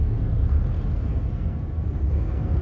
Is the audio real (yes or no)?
no